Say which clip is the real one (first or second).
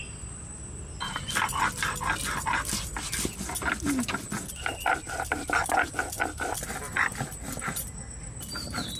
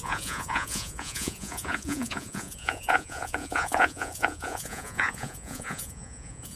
first